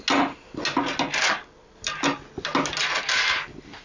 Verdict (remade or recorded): recorded